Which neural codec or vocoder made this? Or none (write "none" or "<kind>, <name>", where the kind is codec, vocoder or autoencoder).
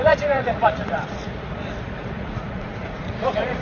vocoder, Vocos